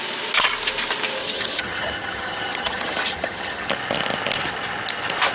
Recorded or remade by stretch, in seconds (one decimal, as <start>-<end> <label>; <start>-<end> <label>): 0.0-1.2 recorded; 1.2-3.7 remade; 3.7-5.3 recorded

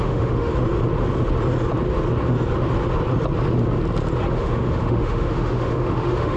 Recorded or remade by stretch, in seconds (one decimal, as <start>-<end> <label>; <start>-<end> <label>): 0.0-0.5 remade; 0.5-4.3 recorded; 4.3-6.4 remade

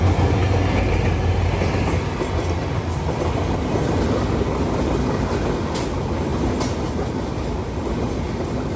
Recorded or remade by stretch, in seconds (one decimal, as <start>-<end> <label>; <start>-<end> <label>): 0.0-8.8 recorded

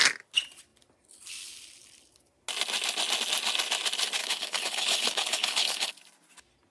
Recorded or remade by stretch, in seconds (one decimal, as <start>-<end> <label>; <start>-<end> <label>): 0.0-4.2 recorded; 4.2-5.9 remade; 5.9-6.7 recorded

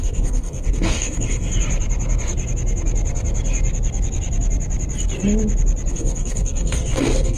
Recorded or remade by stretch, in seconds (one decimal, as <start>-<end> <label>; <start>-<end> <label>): 0.0-1.5 remade; 1.5-5.9 recorded; 5.9-7.4 remade

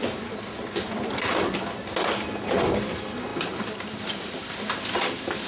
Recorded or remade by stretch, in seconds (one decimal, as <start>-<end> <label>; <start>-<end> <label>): 0.0-3.3 recorded; 3.3-4.4 remade; 4.4-5.5 recorded

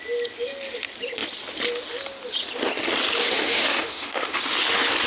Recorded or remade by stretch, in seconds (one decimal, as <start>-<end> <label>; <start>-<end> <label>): 0.0-3.2 recorded; 3.2-4.4 remade; 4.4-5.1 recorded

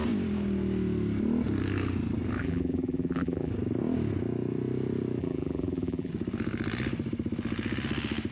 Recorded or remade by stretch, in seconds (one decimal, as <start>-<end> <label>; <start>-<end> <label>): 0.0-2.4 recorded; 2.4-3.5 remade; 3.5-5.2 recorded; 5.2-6.1 remade; 6.1-8.3 recorded